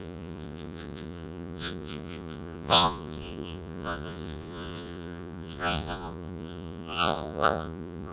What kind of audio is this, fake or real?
fake